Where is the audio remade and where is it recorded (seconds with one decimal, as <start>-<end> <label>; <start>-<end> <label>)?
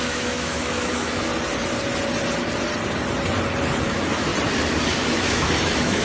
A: 0.0-1.3 remade; 1.3-3.8 recorded; 3.8-4.3 remade; 4.3-5.1 recorded; 5.1-6.0 remade